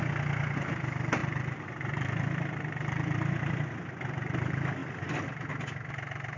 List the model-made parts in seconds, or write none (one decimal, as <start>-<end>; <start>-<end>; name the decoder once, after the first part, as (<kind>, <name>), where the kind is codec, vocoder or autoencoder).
none